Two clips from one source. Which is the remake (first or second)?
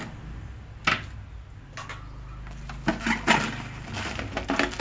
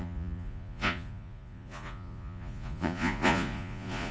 second